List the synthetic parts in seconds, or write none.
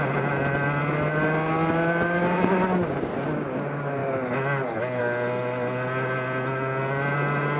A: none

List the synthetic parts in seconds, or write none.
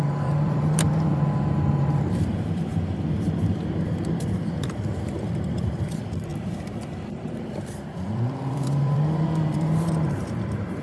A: 0.0-2.7 (vocoder, BigVGAN v2); 3.7-6.3; 7.1-10.8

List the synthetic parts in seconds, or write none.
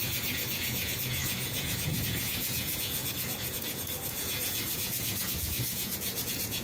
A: 0.0-6.6 (vocoder, Vocos)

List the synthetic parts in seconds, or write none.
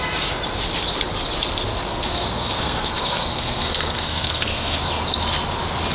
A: 1.9-4.9 (codec, SNAC)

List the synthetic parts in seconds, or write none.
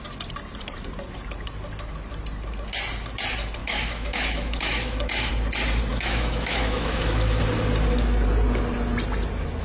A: 3.6-5.3 (autoencoder, DAC-VAE); 5.9-7.4